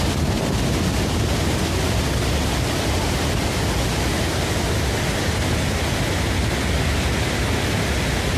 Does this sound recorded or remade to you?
recorded